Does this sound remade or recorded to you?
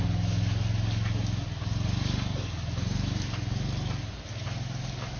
recorded